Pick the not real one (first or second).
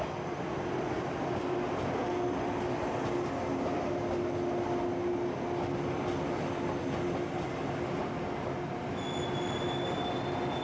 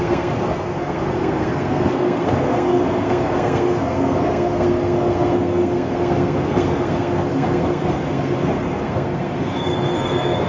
second